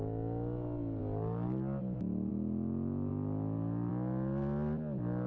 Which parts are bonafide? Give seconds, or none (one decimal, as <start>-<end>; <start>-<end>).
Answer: 0.0-5.3